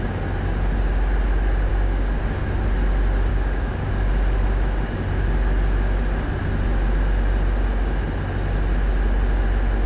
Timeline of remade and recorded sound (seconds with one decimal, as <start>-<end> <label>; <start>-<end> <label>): 0.0-1.7 recorded; 1.7-2.2 remade; 2.2-3.3 recorded; 3.3-3.9 remade; 3.9-9.9 recorded